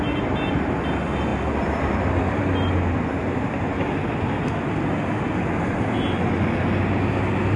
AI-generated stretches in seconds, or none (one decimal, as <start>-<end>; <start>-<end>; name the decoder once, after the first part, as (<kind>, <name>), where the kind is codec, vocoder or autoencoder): none